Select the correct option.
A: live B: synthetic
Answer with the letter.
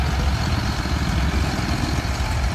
A